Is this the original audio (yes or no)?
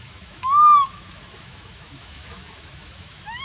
no